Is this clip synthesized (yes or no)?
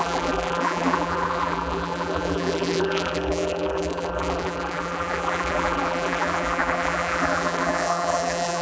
yes